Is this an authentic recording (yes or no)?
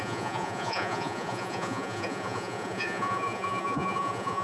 no